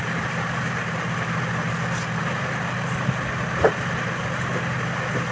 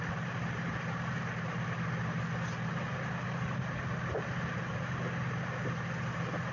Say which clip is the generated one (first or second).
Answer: second